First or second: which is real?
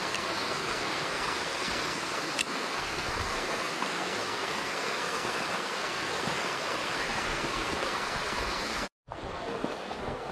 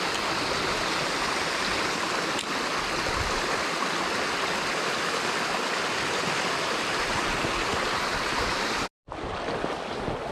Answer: second